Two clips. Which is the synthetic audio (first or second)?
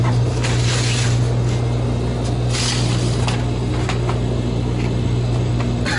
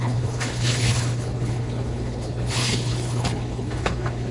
second